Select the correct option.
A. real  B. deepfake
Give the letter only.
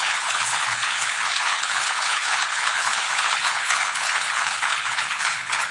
B